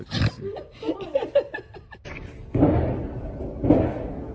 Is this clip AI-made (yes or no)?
no